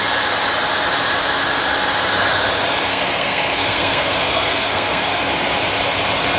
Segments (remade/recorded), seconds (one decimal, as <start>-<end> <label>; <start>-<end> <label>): 0.0-2.9 recorded; 2.9-5.3 remade; 5.3-6.4 recorded